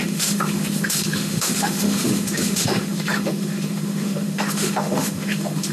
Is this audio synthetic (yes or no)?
yes